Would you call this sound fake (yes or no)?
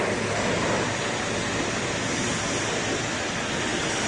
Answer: no